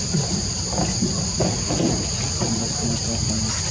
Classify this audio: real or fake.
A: real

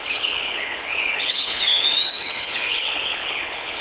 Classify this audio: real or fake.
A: fake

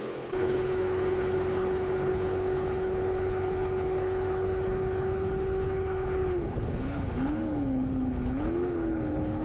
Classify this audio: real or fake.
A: fake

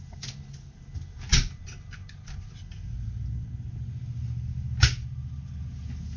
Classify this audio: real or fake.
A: real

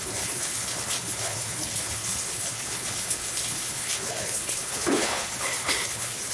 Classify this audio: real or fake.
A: fake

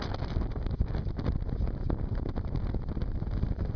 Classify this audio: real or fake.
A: real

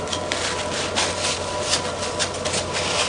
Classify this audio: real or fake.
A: real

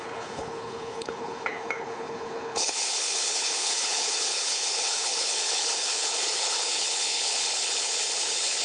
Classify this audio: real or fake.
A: fake